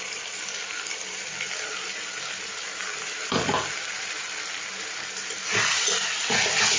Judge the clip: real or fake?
fake